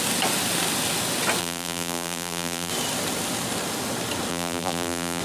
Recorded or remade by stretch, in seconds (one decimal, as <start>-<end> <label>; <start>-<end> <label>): 0.0-1.4 recorded; 1.4-2.7 remade; 2.7-4.3 recorded; 4.3-5.2 remade